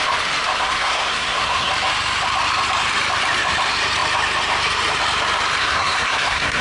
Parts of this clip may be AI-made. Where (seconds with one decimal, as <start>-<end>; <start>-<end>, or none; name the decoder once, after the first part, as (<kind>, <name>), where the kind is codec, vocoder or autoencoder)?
0.6-1.7 (codec, SNAC); 5.6-6.6